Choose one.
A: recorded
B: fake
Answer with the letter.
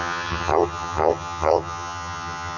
B